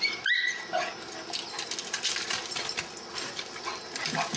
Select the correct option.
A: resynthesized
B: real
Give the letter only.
B